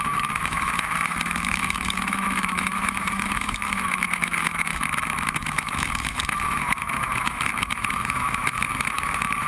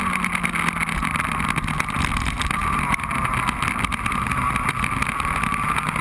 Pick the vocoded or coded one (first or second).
first